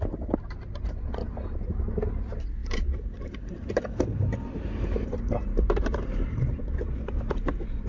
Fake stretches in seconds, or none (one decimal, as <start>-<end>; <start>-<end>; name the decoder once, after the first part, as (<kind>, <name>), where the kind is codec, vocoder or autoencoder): 2.6-7.3 (vocoder, BigVGAN v2)